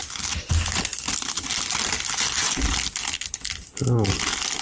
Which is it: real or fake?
real